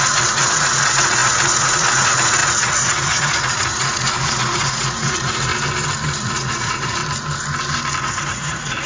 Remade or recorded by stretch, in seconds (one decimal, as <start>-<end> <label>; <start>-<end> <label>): 0.0-5.5 remade; 5.5-6.2 recorded; 6.2-7.0 remade; 7.0-8.0 recorded; 8.0-8.9 remade